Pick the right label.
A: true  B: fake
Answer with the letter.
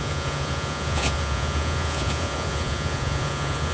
B